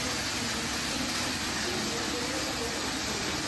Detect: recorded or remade recorded